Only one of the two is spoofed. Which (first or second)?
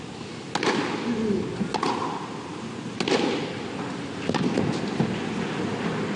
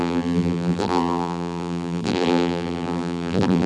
second